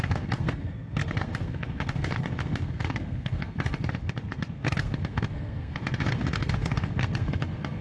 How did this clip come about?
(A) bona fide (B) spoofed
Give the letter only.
B